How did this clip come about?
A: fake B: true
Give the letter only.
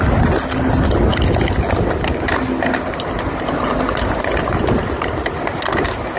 B